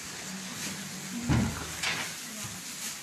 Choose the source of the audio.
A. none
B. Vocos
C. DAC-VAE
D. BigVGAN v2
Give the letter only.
A